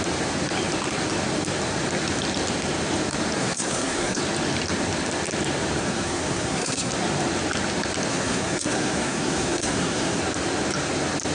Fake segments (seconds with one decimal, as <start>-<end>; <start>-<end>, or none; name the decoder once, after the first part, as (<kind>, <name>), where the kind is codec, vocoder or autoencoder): 3.4-4.2 (codec, SNAC); 5.8-6.9; 8.1-10.2